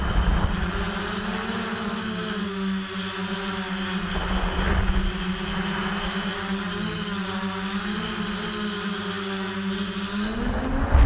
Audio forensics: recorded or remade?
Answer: recorded